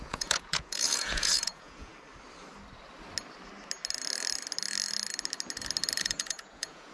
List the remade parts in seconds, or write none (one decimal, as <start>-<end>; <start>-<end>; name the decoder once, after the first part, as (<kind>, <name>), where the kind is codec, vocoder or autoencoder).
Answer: 0.0-1.9 (vocoder, Vocos); 6.0-6.9